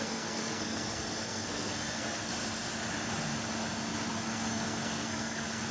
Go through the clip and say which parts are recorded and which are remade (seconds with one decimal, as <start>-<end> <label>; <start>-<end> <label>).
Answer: 0.0-2.3 remade; 2.3-4.1 recorded; 4.1-5.7 remade